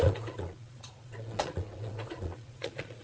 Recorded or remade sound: remade